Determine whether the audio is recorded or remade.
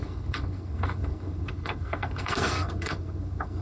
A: remade